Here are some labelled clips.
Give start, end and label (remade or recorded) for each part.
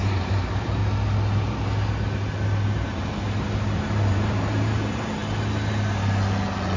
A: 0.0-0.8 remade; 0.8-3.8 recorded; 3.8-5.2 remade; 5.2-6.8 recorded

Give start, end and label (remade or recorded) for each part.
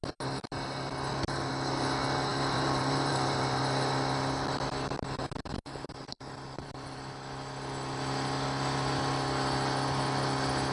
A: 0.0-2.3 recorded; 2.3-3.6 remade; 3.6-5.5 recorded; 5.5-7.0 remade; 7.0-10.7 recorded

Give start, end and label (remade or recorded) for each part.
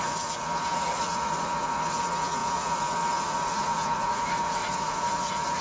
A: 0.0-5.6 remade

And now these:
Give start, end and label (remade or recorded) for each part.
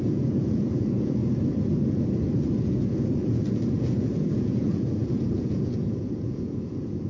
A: 0.0-1.2 remade; 1.2-2.5 recorded; 2.5-7.1 remade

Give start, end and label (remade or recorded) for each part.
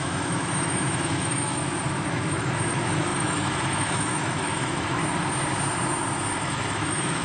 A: 0.0-1.6 remade; 1.6-2.1 recorded; 2.1-5.0 remade; 5.0-6.4 recorded; 6.4-7.2 remade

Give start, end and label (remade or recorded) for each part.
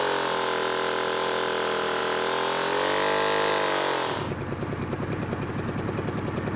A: 0.0-6.6 recorded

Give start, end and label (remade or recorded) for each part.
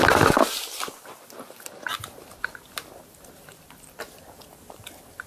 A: 0.0-5.3 recorded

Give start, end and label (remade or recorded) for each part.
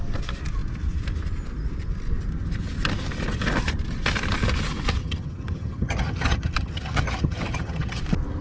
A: 0.0-5.0 recorded; 5.0-8.0 remade; 8.0-8.4 recorded